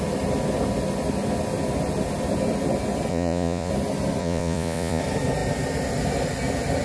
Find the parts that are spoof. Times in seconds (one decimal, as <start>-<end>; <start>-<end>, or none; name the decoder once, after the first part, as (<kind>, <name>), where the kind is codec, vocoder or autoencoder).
3.1-3.7 (vocoder, Vocos); 4.2-5.0